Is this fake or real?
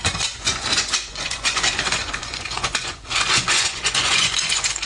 fake